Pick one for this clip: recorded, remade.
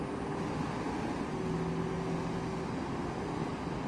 recorded